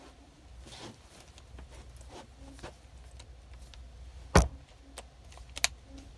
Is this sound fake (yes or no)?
no